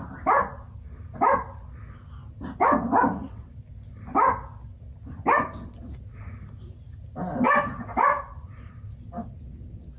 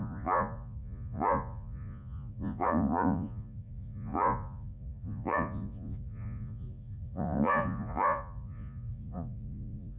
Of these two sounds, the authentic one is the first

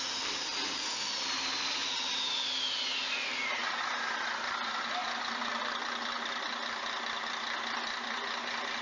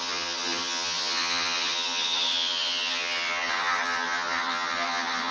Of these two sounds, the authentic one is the first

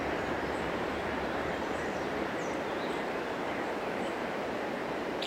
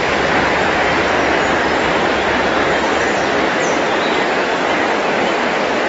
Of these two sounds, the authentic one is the second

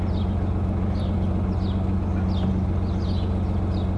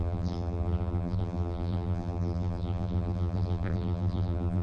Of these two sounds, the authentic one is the first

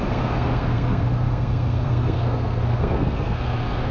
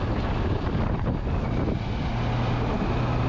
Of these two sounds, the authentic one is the second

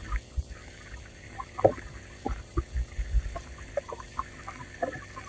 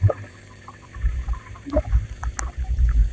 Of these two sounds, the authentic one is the first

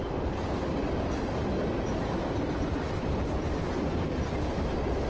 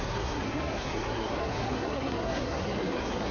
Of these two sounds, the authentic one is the first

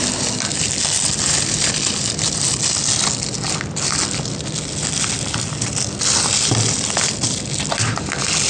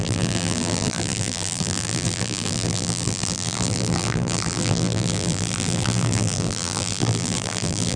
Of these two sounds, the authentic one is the first